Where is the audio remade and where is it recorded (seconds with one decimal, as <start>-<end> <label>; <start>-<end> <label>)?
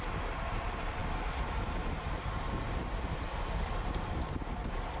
0.0-5.0 recorded